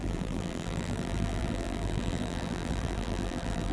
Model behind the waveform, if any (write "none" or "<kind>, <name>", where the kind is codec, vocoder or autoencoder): vocoder, BigVGAN v2